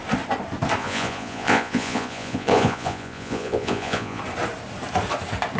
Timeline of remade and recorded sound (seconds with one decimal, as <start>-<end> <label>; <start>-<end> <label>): 0.0-0.8 recorded; 0.8-4.2 remade; 4.2-5.6 recorded